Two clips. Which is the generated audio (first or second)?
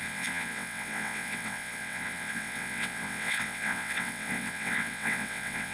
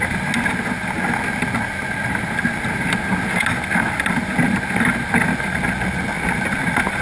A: first